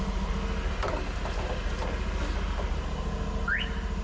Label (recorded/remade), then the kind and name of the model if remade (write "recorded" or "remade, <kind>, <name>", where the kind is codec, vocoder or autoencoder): recorded